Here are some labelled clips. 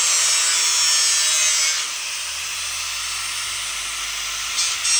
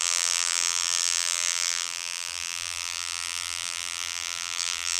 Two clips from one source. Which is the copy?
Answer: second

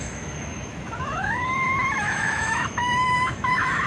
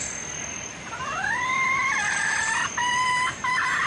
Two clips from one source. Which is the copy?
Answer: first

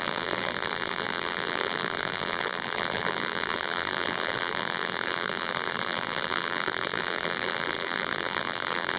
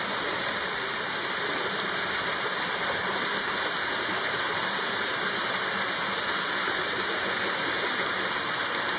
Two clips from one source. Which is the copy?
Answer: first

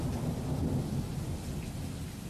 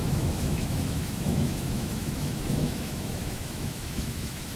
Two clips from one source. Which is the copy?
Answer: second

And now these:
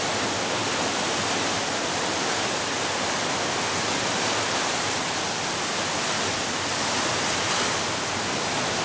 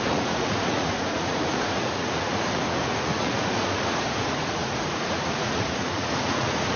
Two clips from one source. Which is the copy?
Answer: second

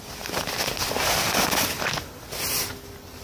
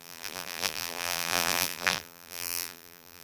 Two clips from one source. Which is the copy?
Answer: second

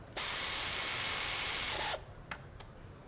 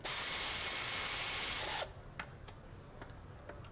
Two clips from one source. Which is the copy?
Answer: first